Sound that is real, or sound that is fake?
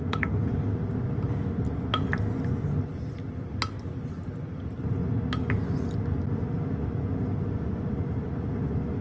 real